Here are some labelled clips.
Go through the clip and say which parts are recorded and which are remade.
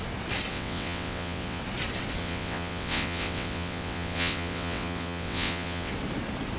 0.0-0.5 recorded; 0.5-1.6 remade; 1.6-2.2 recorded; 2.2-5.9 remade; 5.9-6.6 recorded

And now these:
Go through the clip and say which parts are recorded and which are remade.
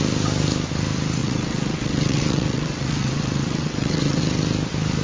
0.0-1.2 recorded; 1.2-4.2 remade; 4.2-5.0 recorded